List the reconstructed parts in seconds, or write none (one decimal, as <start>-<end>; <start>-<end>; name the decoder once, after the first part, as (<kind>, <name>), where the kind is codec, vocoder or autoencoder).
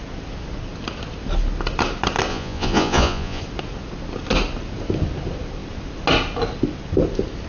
2.3-3.4 (vocoder, Vocos)